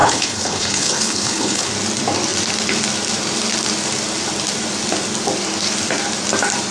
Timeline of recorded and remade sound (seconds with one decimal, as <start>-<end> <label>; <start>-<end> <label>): 0.0-1.7 remade; 1.7-6.7 recorded